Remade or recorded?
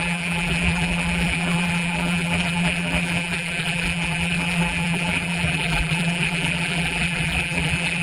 remade